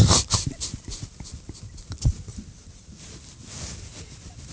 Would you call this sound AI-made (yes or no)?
no